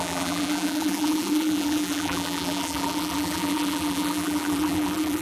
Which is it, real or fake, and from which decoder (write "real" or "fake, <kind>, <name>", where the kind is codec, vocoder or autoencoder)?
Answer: fake, vocoder, BigVGAN v2